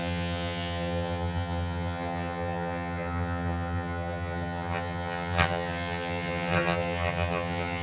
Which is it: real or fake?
fake